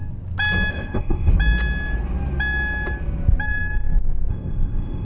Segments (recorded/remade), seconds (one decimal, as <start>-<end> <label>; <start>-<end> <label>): 0.0-0.7 recorded; 0.7-1.3 remade; 1.3-4.3 recorded; 4.3-5.0 remade

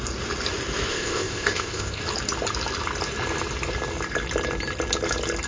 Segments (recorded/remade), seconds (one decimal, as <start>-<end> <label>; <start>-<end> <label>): 0.0-0.9 recorded; 0.9-2.0 remade; 2.0-5.5 recorded